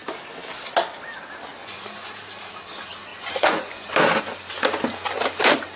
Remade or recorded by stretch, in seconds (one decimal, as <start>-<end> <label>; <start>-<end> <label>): 0.0-1.6 recorded; 1.6-2.1 remade; 2.1-3.1 recorded; 3.1-3.9 remade; 3.9-5.8 recorded

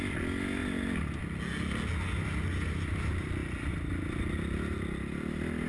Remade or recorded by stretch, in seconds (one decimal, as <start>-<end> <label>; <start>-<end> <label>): 0.0-5.7 recorded

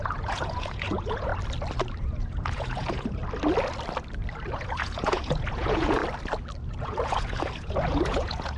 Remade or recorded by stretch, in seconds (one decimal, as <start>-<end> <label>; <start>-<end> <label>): 0.0-1.3 remade; 1.3-2.0 recorded; 2.0-3.2 remade; 3.2-4.5 recorded; 4.5-6.0 remade; 6.0-6.8 recorded; 6.8-8.6 remade

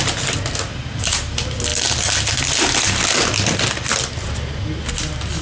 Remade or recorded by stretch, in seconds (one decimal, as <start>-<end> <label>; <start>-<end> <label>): 0.0-5.4 recorded

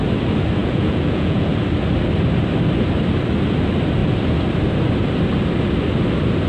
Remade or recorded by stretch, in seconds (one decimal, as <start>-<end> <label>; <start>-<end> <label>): 0.0-0.6 recorded; 0.6-1.5 remade; 1.5-6.5 recorded

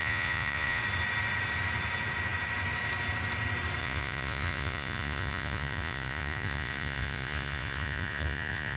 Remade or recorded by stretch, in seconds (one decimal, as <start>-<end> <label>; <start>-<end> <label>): 0.0-0.8 remade; 0.8-3.8 recorded; 3.8-8.8 remade

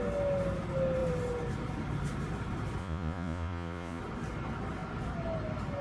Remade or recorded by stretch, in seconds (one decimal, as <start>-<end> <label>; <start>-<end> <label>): 0.0-2.8 recorded; 2.8-4.0 remade; 4.0-5.8 recorded